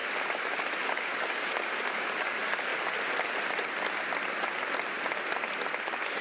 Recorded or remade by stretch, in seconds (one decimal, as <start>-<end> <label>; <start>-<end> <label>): 0.0-0.8 recorded; 0.8-2.7 remade; 2.7-5.8 recorded; 5.8-6.2 remade